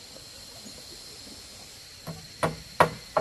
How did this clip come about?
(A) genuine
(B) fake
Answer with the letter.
A